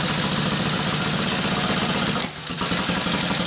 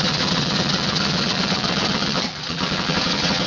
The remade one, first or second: second